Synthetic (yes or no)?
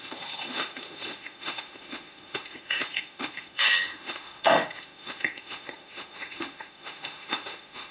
yes